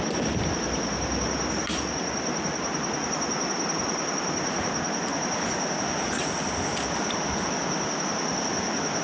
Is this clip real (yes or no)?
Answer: yes